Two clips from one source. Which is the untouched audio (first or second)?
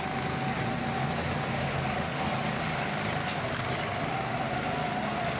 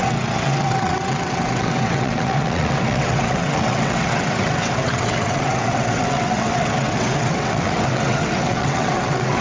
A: first